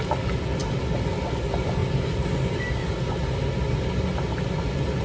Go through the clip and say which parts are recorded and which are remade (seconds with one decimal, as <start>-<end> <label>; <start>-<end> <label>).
0.0-5.0 recorded